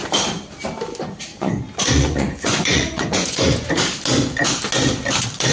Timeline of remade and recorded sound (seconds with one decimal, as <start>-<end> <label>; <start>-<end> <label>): 0.0-1.3 recorded; 1.3-3.7 remade; 3.7-5.5 recorded